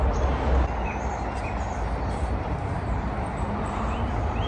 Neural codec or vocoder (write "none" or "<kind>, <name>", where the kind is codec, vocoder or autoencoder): none